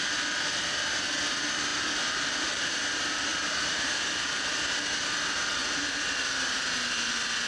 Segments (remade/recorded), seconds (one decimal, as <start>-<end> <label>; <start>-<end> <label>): 0.0-1.7 recorded; 1.7-2.7 remade; 2.7-3.3 recorded; 3.3-5.1 remade; 5.1-5.6 recorded; 5.6-6.1 remade; 6.1-7.5 recorded